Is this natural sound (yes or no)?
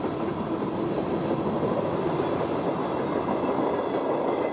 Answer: yes